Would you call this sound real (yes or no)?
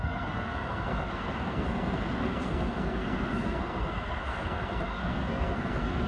no